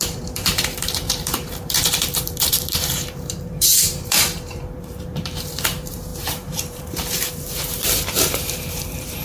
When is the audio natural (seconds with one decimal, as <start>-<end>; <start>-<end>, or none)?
none